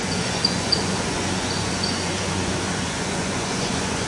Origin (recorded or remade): remade